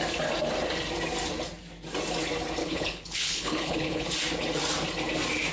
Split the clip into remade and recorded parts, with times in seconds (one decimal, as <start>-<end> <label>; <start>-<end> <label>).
0.0-2.6 recorded; 2.6-4.1 remade; 4.1-5.5 recorded